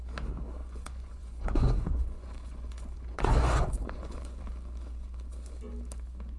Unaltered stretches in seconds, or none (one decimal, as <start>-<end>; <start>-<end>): 0.0-0.6; 4.4-6.4